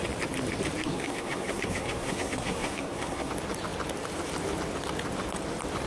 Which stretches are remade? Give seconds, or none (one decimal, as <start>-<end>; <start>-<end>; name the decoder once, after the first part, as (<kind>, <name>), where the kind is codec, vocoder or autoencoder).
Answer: 0.8-3.3 (codec, SNAC)